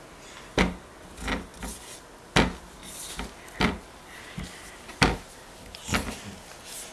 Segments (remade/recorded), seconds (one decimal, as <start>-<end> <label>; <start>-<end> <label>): 0.0-6.9 recorded